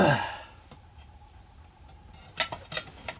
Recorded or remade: recorded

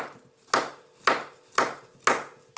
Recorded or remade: recorded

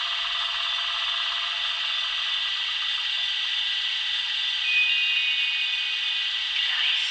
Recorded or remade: recorded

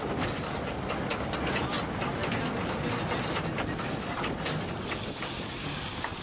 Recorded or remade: recorded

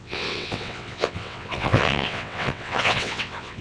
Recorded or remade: remade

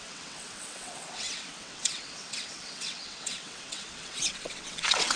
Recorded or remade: remade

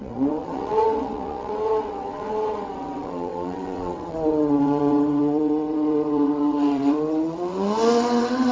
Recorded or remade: remade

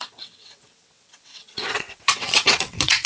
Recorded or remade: remade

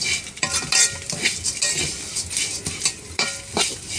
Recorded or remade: recorded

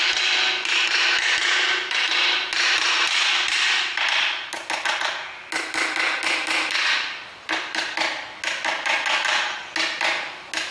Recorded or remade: recorded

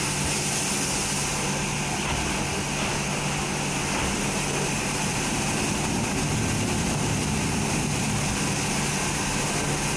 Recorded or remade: recorded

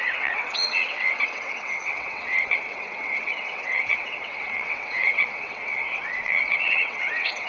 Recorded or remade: remade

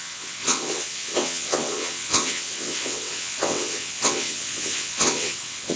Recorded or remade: remade